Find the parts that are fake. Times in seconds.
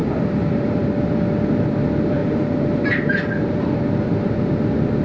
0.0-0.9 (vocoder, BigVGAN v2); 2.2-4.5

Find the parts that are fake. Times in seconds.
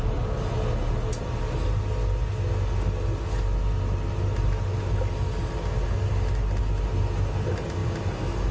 none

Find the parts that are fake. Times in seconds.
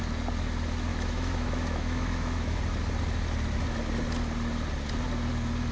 0.9-2.6 (autoencoder, DAC-VAE)